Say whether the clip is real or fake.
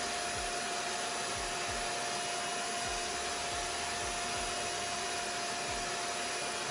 real